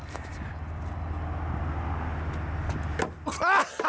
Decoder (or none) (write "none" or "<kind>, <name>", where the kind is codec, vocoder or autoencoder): none